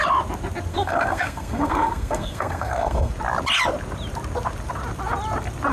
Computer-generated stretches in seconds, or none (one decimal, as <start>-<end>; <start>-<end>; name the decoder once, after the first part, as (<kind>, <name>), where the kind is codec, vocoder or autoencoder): 0.7-3.1 (codec, SNAC)